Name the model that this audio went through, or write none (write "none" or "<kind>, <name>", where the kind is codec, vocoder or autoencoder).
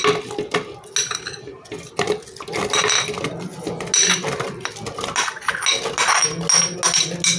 none